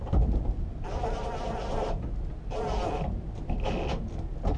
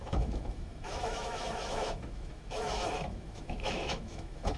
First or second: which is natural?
first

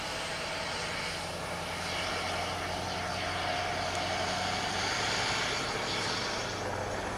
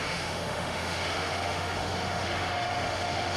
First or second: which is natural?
first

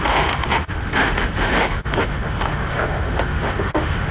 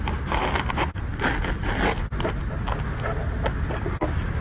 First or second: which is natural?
second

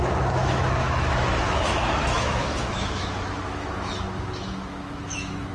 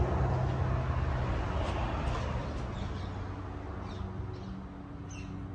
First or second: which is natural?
second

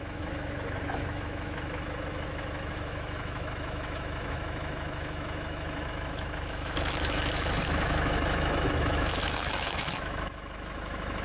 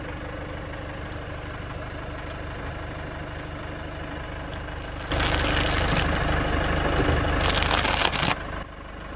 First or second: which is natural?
second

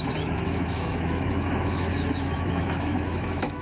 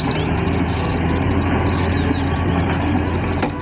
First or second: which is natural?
second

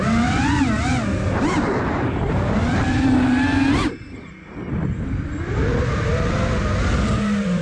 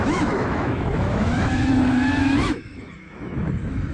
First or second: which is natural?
first